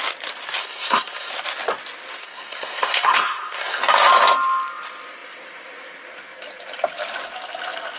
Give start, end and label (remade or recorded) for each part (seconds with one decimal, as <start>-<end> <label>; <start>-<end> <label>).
0.0-0.6 recorded; 0.6-1.3 remade; 1.3-2.2 recorded; 2.2-3.8 remade; 3.8-8.0 recorded